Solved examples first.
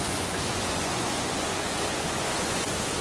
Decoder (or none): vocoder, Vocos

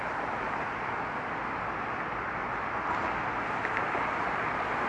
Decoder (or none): none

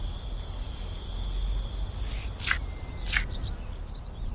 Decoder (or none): none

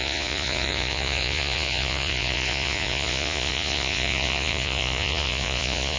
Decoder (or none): vocoder, Vocos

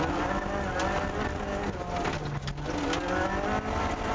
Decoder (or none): none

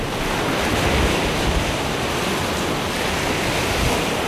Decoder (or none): none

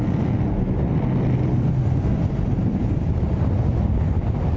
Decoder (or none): none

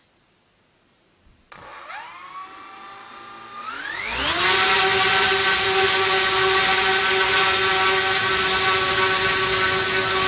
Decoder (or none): none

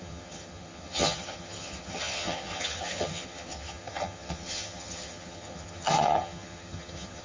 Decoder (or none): vocoder, HiFi-GAN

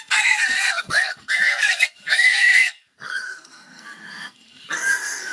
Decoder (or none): codec, SNAC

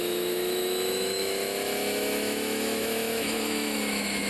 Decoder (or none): autoencoder, DAC-VAE